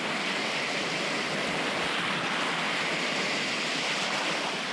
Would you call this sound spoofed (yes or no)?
no